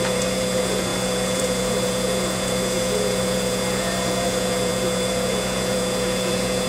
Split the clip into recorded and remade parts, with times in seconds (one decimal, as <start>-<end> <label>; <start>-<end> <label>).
0.0-6.7 remade